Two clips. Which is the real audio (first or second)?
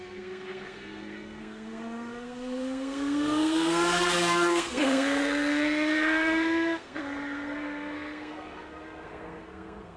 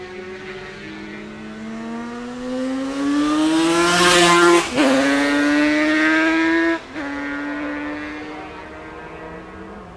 second